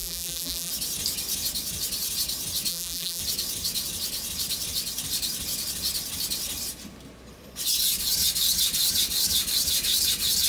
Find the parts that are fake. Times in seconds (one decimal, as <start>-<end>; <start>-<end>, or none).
0.0-0.7; 2.7-3.2

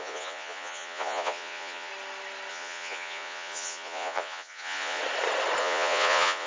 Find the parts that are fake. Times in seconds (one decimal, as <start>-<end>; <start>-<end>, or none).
0.0-1.9; 2.5-5.0; 5.6-6.5

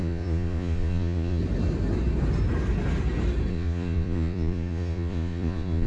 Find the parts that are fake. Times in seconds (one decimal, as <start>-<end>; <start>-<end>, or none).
0.0-1.4; 3.5-5.9

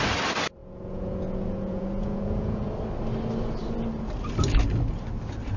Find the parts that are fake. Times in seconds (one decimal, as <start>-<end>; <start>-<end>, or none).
0.6-2.7

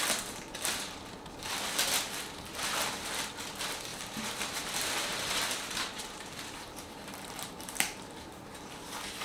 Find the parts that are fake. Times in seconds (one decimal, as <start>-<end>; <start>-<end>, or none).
3.9-8.7